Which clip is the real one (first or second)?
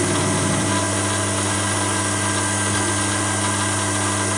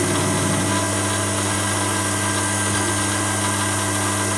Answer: second